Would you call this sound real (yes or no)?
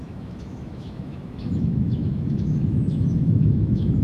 no